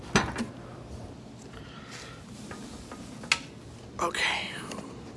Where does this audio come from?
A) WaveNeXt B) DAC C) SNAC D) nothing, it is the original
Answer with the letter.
D